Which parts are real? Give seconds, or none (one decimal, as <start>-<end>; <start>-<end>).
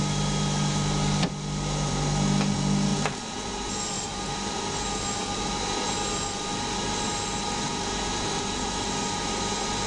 0.0-9.9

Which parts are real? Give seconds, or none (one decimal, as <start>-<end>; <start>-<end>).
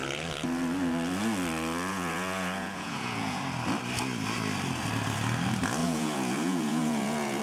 0.0-1.9; 3.4-5.8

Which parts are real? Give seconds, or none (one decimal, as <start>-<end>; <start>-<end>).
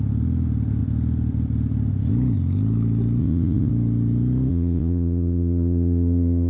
0.0-3.2; 3.7-4.5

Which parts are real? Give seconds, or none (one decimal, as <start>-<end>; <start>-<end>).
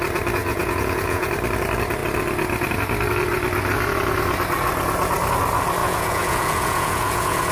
0.0-0.4; 1.3-5.8